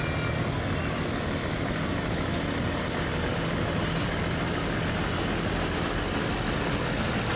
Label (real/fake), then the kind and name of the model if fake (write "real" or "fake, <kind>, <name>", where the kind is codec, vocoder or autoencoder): real